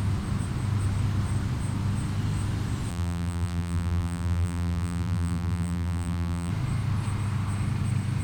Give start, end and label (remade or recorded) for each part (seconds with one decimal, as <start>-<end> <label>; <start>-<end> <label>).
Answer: 0.0-2.9 recorded; 2.9-6.5 remade; 6.5-8.2 recorded